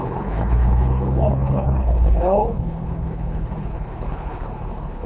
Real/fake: fake